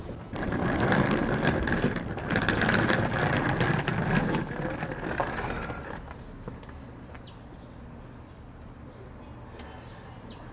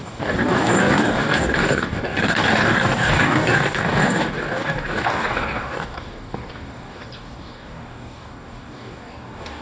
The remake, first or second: second